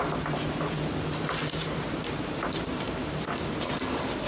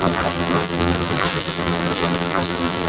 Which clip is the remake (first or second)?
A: second